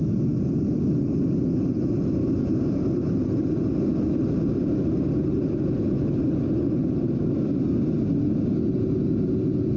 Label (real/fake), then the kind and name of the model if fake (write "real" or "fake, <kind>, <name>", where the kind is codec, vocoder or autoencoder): real